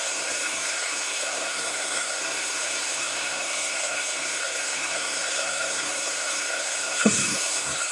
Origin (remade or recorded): remade